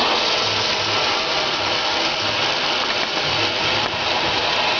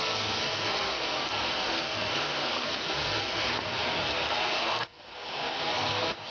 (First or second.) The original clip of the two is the first